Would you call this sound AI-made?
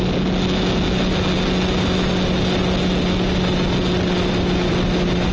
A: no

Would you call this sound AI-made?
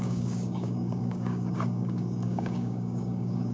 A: yes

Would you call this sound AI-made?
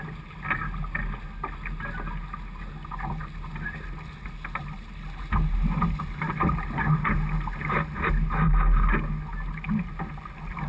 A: no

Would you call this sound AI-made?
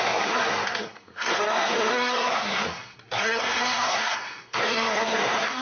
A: yes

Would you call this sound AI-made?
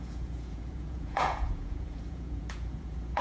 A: yes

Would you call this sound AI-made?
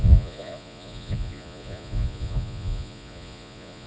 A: yes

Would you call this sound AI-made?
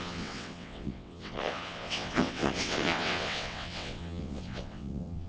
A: yes